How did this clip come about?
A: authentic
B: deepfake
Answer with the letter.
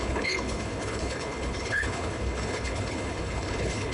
B